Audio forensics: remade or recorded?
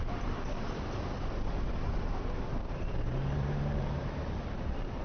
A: remade